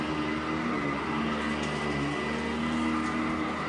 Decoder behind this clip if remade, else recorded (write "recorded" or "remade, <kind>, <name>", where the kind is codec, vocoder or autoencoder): recorded